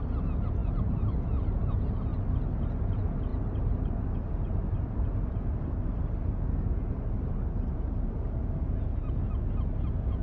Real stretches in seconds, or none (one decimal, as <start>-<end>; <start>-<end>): 0.0-0.6; 1.2-3.3; 8.2-10.2